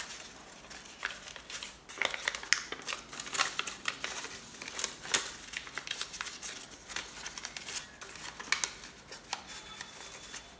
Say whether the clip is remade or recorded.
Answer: recorded